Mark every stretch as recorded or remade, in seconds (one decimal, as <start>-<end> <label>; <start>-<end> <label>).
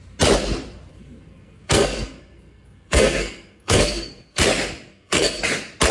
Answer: 0.0-0.9 recorded; 0.9-4.4 remade; 4.4-4.9 recorded; 4.9-5.4 remade; 5.4-5.9 recorded